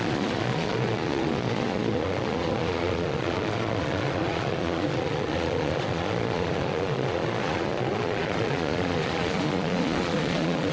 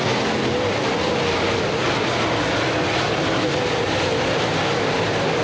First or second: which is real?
second